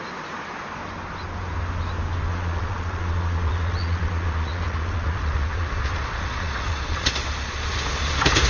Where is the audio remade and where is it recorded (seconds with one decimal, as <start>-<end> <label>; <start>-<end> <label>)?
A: 0.0-2.3 recorded; 2.3-7.1 remade; 7.1-8.5 recorded